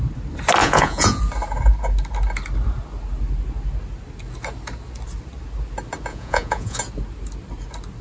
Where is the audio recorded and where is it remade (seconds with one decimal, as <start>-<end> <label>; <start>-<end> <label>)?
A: 0.0-0.6 recorded; 0.6-1.2 remade; 1.2-6.1 recorded; 6.1-6.8 remade; 6.8-8.0 recorded